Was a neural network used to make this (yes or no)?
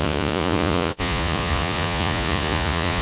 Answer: yes